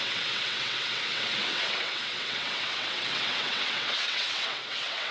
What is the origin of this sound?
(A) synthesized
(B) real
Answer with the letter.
A